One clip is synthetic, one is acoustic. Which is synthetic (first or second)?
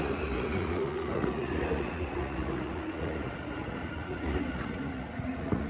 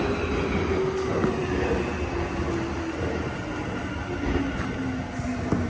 first